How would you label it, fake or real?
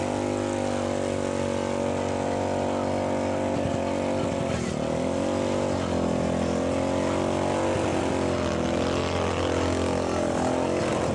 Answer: real